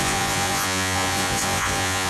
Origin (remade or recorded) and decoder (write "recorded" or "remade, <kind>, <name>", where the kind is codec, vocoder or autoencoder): remade, vocoder, Vocos